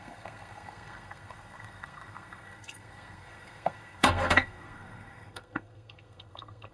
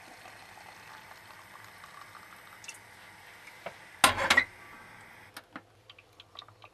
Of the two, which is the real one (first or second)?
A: second